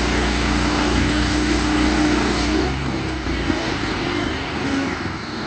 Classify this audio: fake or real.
fake